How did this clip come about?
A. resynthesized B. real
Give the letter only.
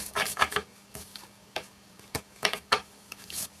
A